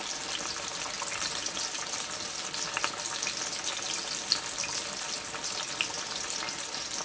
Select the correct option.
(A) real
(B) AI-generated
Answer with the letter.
A